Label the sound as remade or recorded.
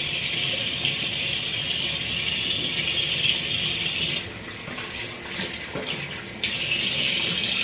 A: recorded